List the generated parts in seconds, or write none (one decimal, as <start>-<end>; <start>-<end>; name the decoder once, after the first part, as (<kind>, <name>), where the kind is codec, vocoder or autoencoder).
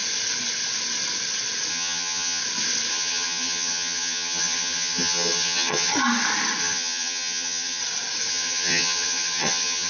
1.7-2.4 (vocoder, HiFi-GAN); 2.9-5.9; 6.6-7.8; 8.3-9.9